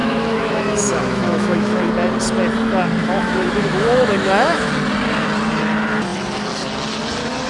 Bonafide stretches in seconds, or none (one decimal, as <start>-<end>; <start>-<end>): 1.9-3.0; 4.7-7.5